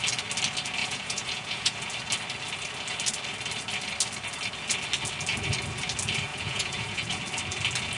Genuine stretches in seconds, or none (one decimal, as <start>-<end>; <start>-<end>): 0.0-0.8; 1.9-6.3; 7.2-8.0